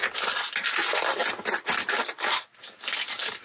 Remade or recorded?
recorded